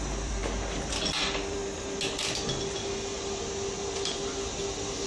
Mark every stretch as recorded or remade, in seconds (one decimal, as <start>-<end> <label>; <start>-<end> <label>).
0.0-0.4 remade; 0.4-0.9 recorded; 0.9-1.6 remade; 1.6-5.1 recorded